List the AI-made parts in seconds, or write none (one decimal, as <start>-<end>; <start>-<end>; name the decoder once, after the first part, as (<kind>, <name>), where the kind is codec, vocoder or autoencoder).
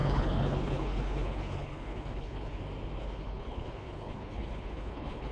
0.0-2.6 (codec, HILCodec); 3.0-5.3